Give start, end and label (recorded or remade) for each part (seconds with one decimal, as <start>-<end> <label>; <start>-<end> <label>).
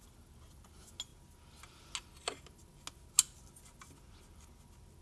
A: 0.0-5.0 recorded